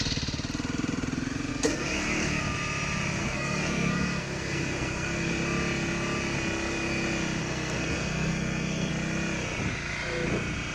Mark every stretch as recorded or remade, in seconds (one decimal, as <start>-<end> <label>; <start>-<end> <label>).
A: 0.0-1.5 recorded; 1.5-2.4 remade; 2.4-3.2 recorded; 3.2-5.3 remade; 5.3-7.4 recorded; 7.4-8.9 remade; 8.9-10.7 recorded